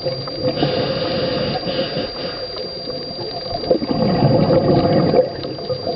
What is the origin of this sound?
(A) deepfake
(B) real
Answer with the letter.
B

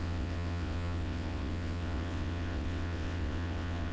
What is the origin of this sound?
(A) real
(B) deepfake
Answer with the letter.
B